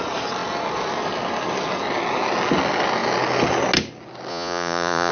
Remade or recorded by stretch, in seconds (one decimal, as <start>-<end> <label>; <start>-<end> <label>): 0.0-4.3 recorded; 4.3-5.1 remade